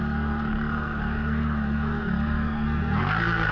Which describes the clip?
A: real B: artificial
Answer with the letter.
B